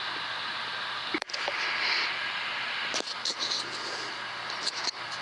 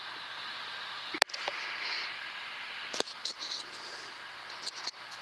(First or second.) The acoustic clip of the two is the second